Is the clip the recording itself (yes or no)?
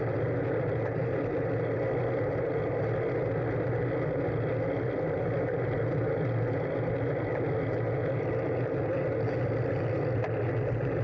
yes